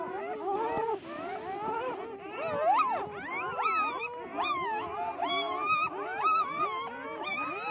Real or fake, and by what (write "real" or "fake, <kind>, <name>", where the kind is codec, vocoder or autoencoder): real